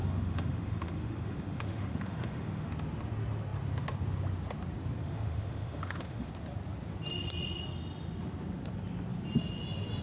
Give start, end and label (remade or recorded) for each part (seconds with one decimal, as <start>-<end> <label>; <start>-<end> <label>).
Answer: 0.0-2.7 remade; 2.7-5.0 recorded; 5.0-6.3 remade; 6.3-10.0 recorded